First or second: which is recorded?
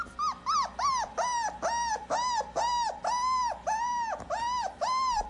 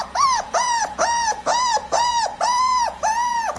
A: first